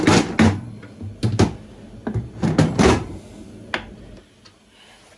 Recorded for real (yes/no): yes